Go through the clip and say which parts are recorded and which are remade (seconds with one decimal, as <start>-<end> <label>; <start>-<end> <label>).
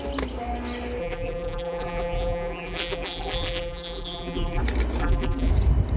0.0-1.0 recorded; 1.0-4.6 remade; 4.6-5.0 recorded; 5.0-5.5 remade; 5.5-6.0 recorded